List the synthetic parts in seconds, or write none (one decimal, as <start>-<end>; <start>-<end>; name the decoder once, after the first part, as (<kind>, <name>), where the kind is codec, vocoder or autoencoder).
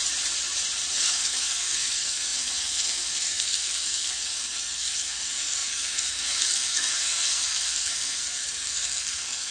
0.9-9.5 (codec, SNAC)